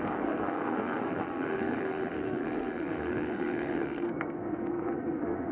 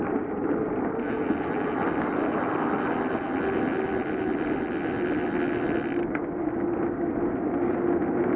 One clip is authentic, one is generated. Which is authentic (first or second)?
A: second